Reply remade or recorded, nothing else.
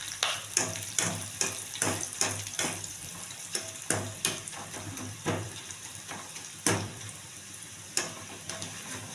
remade